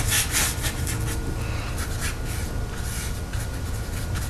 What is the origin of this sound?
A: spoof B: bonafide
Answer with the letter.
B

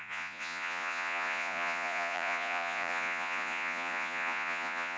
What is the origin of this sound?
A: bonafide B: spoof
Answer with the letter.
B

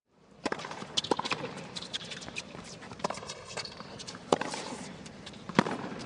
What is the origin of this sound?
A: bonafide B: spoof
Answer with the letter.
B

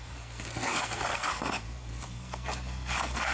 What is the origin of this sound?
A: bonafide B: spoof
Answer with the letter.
B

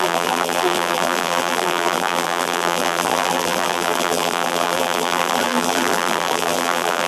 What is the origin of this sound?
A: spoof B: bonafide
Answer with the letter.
A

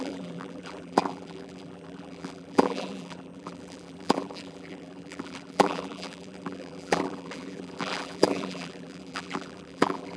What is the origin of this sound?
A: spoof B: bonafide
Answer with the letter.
A